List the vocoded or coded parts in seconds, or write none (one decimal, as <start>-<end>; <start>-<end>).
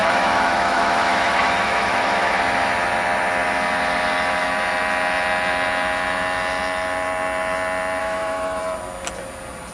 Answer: 0.0-2.4; 8.0-8.6